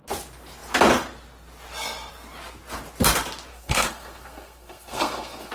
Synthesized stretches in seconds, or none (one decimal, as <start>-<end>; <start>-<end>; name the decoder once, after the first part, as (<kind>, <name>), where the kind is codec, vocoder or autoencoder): 3.5-5.5 (codec, SNAC)